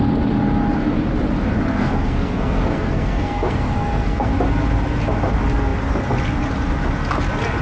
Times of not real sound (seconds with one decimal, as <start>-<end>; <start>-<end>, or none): 1.8-4.3

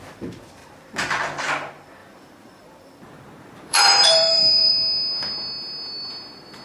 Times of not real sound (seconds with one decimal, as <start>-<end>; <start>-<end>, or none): 2.0-4.7

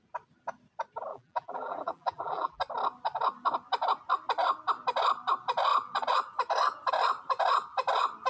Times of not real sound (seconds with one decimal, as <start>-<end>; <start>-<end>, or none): 1.1-2.6

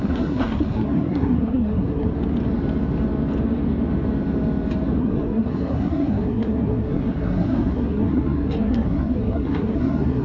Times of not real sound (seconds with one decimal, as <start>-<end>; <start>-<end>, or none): 0.0-2.1; 5.0-10.2